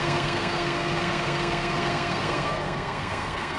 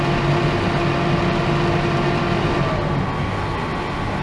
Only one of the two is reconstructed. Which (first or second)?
first